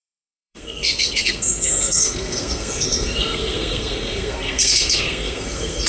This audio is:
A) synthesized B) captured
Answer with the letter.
A